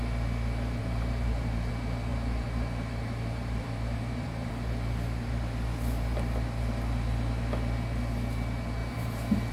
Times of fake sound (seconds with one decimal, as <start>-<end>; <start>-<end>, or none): 0.8-1.7; 2.1-4.5; 8.8-9.5